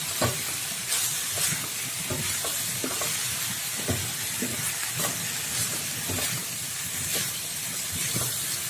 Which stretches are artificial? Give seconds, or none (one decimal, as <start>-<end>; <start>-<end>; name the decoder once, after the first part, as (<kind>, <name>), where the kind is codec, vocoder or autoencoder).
5.7-7.8 (vocoder, BigVGAN v2)